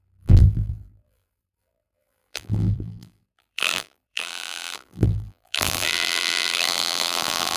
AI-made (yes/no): yes